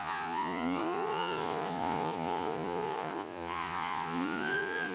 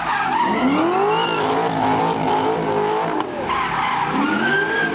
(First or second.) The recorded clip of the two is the second